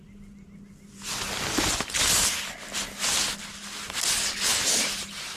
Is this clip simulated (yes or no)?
no